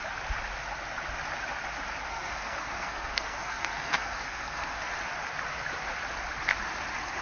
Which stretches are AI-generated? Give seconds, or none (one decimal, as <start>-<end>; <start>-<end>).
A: 2.1-4.9